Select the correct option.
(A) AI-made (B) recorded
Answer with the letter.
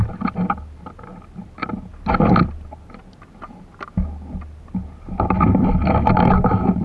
B